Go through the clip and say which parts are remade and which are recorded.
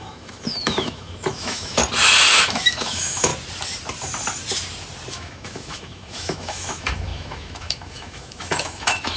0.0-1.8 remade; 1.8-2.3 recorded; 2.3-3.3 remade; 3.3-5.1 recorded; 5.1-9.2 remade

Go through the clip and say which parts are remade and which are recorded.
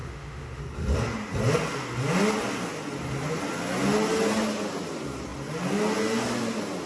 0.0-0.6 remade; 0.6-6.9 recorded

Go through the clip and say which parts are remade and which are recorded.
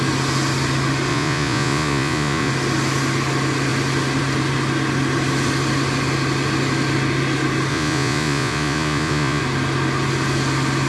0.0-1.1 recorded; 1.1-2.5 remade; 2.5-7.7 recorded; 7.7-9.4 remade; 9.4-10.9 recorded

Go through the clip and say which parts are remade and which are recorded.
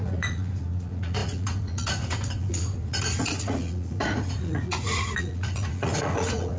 0.0-6.6 remade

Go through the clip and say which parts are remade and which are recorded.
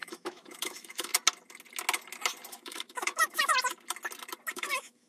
0.0-1.1 remade; 1.1-2.5 recorded; 2.5-3.5 remade; 3.5-4.5 recorded; 4.5-5.1 remade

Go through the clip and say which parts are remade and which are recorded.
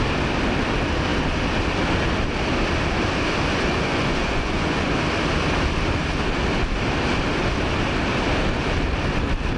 0.0-3.7 recorded; 3.7-4.9 remade; 4.9-9.6 recorded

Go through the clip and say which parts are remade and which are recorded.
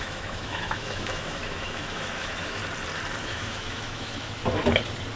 0.0-2.6 remade; 2.6-3.2 recorded; 3.2-4.4 remade; 4.4-5.2 recorded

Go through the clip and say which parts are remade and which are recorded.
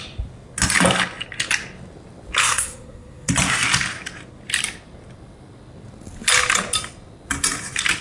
0.0-2.4 recorded; 2.4-3.3 remade; 3.3-8.0 recorded